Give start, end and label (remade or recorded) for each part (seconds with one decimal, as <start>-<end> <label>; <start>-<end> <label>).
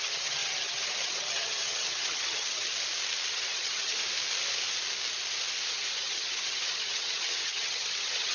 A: 0.0-2.7 remade; 2.7-3.3 recorded; 3.3-4.0 remade; 4.0-5.7 recorded; 5.7-8.3 remade